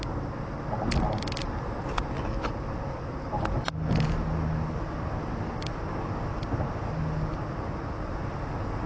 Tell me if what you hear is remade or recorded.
recorded